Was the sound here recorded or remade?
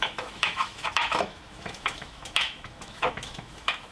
remade